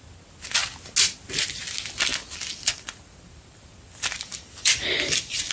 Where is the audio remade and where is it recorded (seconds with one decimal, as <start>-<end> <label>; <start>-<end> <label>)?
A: 0.0-2.1 recorded; 2.1-5.5 remade